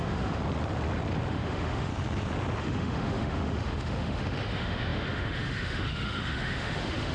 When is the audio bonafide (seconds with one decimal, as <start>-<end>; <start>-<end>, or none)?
0.4-1.3; 1.9-2.6